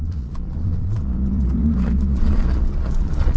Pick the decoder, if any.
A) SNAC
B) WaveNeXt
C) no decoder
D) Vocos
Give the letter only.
D